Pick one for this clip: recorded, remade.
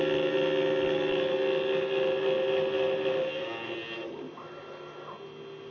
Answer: recorded